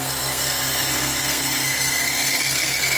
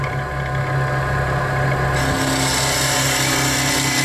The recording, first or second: second